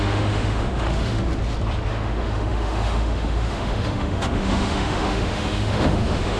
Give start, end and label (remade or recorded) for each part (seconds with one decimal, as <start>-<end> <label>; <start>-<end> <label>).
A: 0.0-1.3 remade; 1.3-1.9 recorded; 1.9-6.4 remade